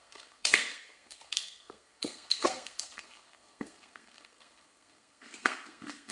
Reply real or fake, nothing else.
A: fake